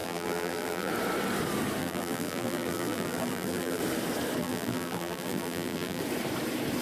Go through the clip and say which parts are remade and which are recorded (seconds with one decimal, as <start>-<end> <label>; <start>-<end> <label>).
0.0-0.9 remade; 0.9-1.8 recorded; 1.8-3.8 remade; 3.8-4.4 recorded; 4.4-6.0 remade; 6.0-6.8 recorded